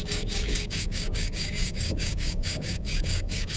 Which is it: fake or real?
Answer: fake